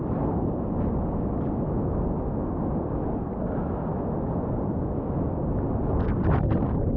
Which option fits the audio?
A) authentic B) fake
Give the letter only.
A